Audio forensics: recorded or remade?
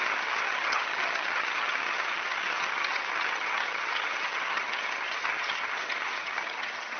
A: remade